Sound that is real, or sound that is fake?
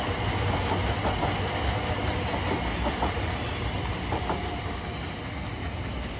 real